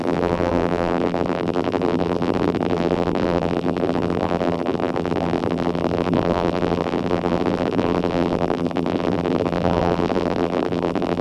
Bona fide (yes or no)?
no